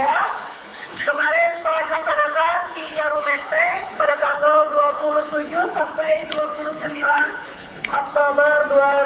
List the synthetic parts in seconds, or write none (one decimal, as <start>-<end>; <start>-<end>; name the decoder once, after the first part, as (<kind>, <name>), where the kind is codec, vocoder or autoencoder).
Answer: 0.0-8.2 (codec, HILCodec)